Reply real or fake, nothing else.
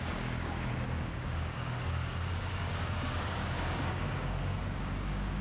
fake